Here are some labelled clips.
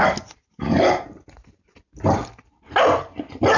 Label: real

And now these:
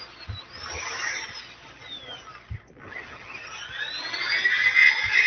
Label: real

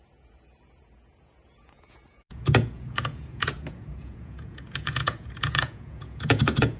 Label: fake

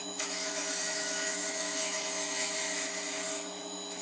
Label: fake